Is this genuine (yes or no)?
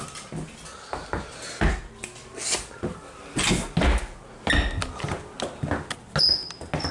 yes